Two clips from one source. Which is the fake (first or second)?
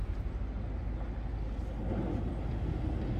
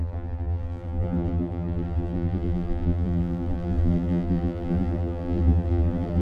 second